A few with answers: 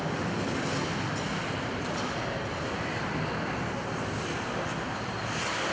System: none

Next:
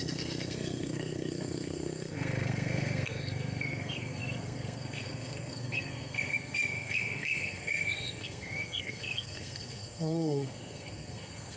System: codec, SNAC